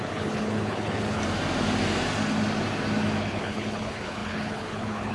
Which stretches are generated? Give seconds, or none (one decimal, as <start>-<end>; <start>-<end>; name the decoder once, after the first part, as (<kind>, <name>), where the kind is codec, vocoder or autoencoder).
0.0-1.2 (codec, HILCodec); 3.2-5.1